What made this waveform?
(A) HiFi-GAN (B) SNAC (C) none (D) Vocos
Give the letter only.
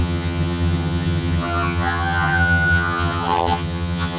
A